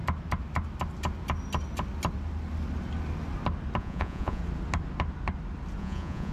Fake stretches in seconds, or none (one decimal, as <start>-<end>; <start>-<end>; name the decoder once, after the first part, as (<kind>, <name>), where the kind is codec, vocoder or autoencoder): 3.8-4.4 (vocoder, Vocos); 5.8-6.3